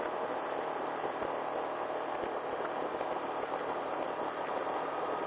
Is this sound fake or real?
real